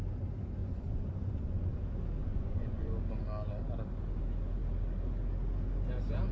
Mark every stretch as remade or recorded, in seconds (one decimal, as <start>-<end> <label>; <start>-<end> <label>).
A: 0.0-0.6 recorded; 0.6-1.8 remade; 1.8-2.2 recorded; 2.2-2.9 remade; 2.9-6.3 recorded